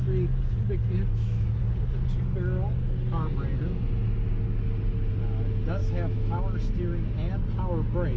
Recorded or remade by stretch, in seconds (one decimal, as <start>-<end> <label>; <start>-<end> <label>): 0.0-1.1 recorded; 1.1-1.6 remade; 1.6-5.8 recorded; 5.8-6.4 remade; 6.4-8.2 recorded